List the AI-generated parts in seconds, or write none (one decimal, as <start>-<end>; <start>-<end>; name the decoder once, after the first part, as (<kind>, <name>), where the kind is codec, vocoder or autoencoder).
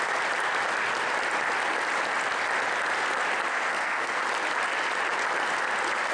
3.5-4.2 (codec, SNAC)